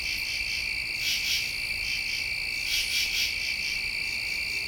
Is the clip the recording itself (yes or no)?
yes